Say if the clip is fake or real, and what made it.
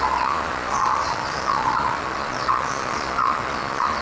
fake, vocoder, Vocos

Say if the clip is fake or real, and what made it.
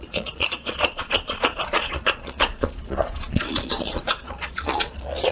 fake, vocoder, Vocos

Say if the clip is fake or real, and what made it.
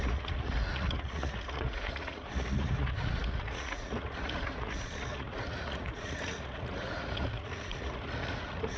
fake, vocoder, Vocos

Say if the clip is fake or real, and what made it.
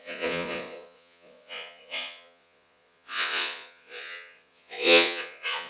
fake, vocoder, Vocos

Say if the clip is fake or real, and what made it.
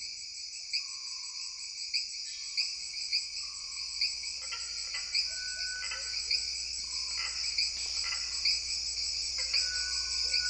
real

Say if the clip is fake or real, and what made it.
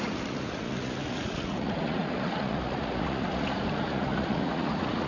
fake, vocoder, Vocos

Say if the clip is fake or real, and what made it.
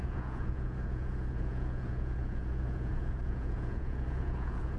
fake, vocoder, Vocos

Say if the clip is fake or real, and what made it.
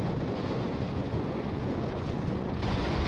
fake, vocoder, Vocos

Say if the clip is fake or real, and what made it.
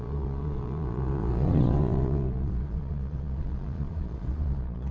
fake, vocoder, Vocos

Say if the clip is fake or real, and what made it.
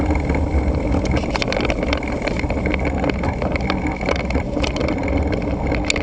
real